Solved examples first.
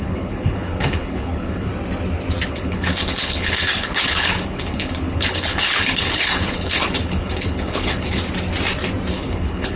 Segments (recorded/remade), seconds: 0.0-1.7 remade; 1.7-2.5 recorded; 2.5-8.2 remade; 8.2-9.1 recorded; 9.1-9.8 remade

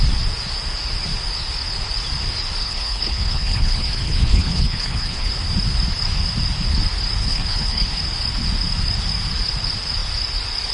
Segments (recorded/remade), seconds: 0.0-2.6 recorded; 2.6-5.3 remade; 5.3-7.2 recorded; 7.2-8.0 remade; 8.0-10.7 recorded

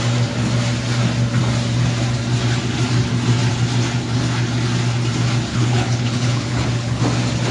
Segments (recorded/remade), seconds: 0.0-5.5 recorded; 5.5-7.0 remade; 7.0-7.5 recorded

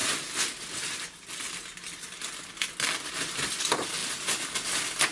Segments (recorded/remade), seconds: 0.0-5.1 recorded

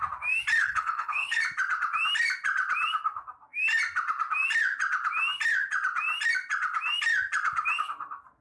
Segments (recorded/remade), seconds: 0.0-0.6 recorded; 0.6-1.4 remade; 1.4-8.4 recorded

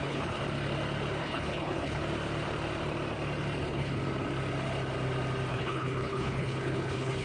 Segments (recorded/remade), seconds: 0.0-0.4 remade; 0.4-1.2 recorded; 1.2-2.0 remade; 2.0-3.6 recorded; 3.6-4.0 remade; 4.0-5.5 recorded; 5.5-7.2 remade

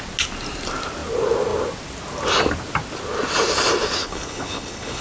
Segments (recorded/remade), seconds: 0.0-4.0 recorded; 4.0-5.0 remade

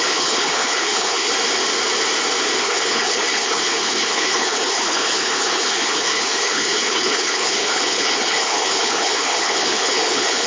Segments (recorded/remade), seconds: 0.0-1.3 remade; 1.3-2.6 recorded; 2.6-10.5 remade